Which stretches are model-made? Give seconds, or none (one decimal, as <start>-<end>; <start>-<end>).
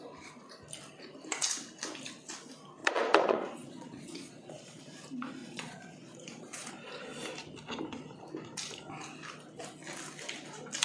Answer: 2.8-4.8; 5.4-6.7